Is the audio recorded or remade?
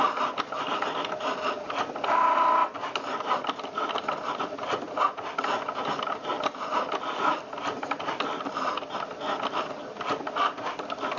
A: recorded